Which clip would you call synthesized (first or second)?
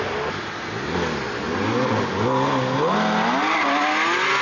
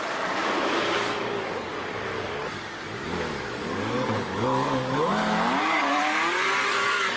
second